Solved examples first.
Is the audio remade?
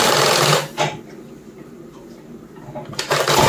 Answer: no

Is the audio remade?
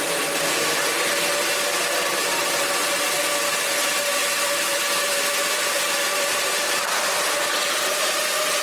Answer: no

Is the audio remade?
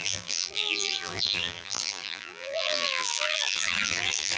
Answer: yes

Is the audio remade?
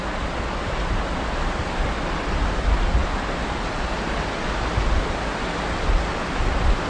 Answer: no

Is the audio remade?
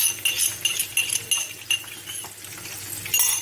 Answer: no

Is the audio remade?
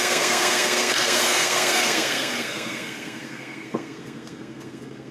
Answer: yes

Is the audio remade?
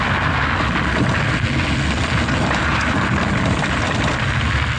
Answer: no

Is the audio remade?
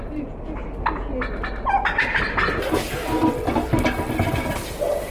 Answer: no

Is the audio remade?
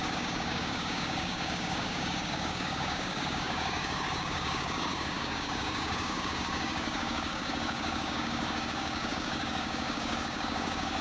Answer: yes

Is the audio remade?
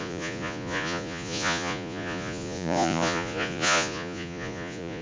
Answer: yes